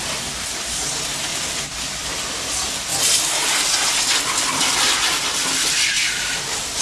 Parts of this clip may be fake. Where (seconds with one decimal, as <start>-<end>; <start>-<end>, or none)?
1.3-2.1